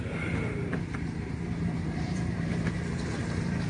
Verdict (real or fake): fake